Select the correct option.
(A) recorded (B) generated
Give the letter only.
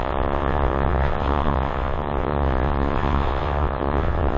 B